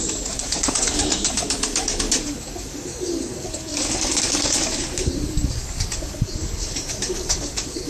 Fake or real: fake